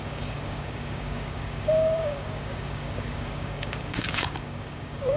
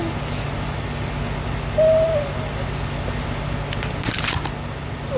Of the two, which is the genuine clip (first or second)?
second